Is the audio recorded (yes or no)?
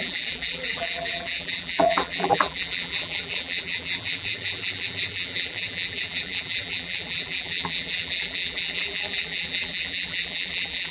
no